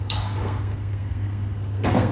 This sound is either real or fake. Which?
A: fake